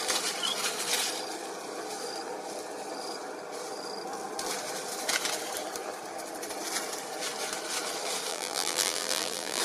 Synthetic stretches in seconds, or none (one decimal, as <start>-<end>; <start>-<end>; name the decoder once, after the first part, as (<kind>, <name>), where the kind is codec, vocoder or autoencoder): 8.3-9.6 (vocoder, BigVGAN v2)